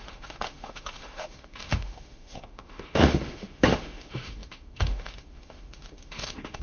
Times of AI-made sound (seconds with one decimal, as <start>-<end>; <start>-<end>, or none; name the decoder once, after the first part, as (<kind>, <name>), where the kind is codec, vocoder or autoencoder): 0.0-6.6 (autoencoder, DAC-VAE)

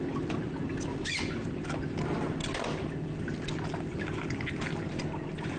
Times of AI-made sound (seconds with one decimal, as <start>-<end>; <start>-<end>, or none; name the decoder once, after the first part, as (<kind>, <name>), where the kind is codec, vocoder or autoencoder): none